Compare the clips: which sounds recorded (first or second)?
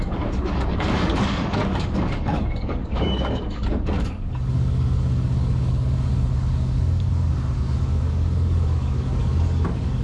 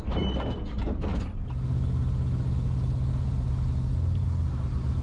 second